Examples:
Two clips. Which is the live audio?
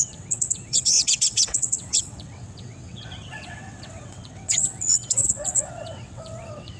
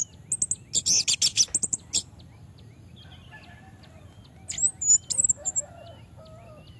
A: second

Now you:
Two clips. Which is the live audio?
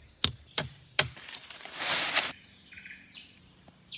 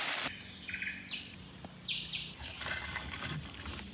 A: second